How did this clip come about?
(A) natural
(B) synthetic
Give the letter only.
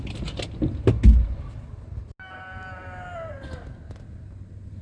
A